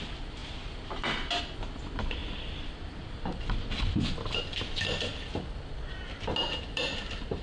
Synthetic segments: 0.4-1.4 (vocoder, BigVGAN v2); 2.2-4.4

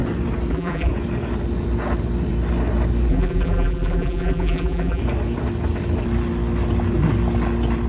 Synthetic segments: 0.5-0.9 (vocoder, BigVGAN v2); 3.1-5.0

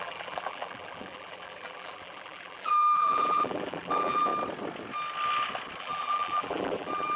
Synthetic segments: 0.0-4.3 (vocoder, BigVGAN v2); 5.8-7.2